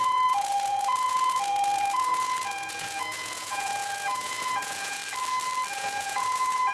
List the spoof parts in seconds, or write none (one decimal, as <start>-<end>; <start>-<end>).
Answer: 0.0-5.0; 5.7-6.7

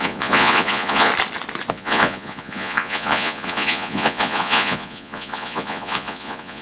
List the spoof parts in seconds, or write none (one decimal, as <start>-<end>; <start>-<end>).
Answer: 0.0-1.1; 1.7-6.6

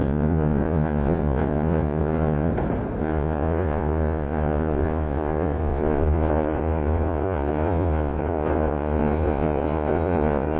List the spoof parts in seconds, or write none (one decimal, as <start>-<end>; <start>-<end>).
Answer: 0.0-2.5; 3.0-10.6